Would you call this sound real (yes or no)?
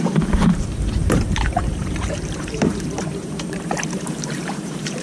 no